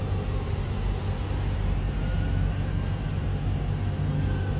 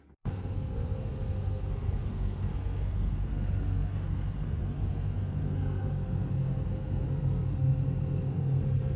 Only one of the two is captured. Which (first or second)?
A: first